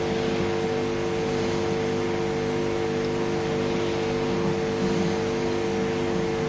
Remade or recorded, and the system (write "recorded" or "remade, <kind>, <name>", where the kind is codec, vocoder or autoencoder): recorded